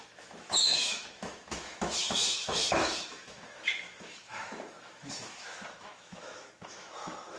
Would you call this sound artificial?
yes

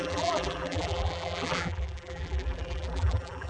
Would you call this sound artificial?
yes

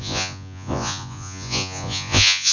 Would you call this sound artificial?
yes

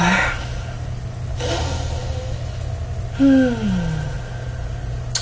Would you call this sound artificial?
no